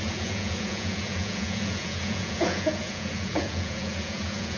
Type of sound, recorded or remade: remade